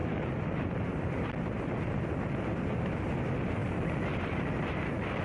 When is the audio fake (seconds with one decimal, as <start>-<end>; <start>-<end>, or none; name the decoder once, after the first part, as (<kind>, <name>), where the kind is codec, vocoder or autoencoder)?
none